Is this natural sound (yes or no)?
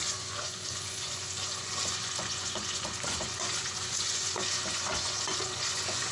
no